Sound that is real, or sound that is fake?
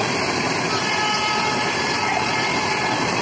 fake